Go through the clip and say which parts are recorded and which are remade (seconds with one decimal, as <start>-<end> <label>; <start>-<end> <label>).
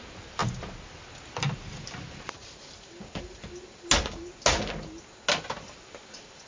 0.0-6.5 recorded